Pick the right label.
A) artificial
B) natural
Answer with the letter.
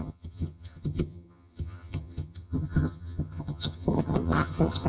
A